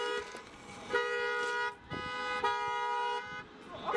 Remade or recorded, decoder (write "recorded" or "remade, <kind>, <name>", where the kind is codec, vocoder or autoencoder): recorded